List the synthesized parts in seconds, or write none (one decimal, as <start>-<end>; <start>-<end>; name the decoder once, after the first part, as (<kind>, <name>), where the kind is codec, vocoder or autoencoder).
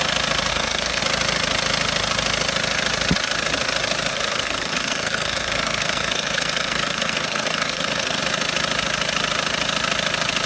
0.5-1.0 (codec, SNAC); 4.1-8.2